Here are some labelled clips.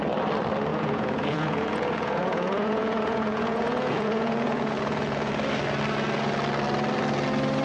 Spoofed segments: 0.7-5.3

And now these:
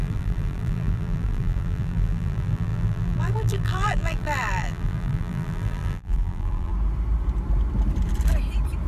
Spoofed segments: 0.0-6.7

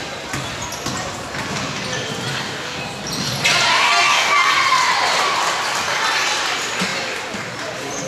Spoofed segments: 2.3-2.8; 3.7-4.5

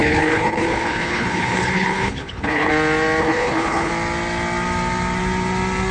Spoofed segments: 0.0-2.7; 3.2-3.9

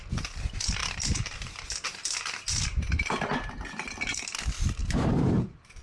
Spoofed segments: 0.8-2.8; 4.8-5.8

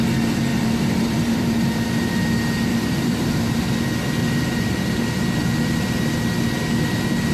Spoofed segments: 0.5-2.2; 2.7-3.6; 4.2-5.0

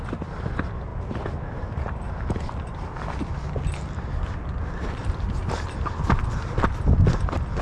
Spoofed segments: none